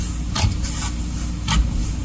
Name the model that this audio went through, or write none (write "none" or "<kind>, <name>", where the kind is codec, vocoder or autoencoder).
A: none